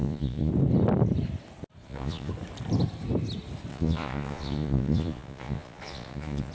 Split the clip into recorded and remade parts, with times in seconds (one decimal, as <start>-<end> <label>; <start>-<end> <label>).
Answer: 0.0-0.5 remade; 0.5-1.8 recorded; 1.8-2.3 remade; 2.3-3.7 recorded; 3.7-6.5 remade